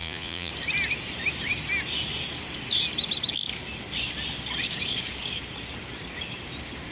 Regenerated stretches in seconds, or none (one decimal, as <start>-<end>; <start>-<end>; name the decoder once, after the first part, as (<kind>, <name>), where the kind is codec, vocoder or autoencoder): 0.0-0.5 (vocoder, Vocos)